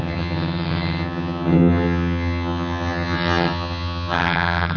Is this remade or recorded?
remade